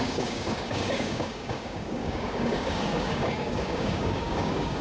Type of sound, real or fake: fake